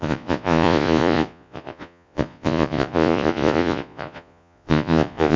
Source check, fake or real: fake